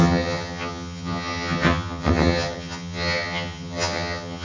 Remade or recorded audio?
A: remade